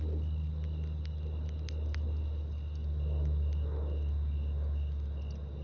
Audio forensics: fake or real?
real